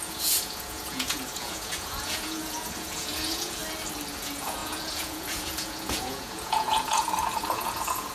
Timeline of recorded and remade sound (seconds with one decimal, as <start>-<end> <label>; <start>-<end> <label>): 0.0-3.6 remade; 3.6-4.1 recorded; 4.1-8.1 remade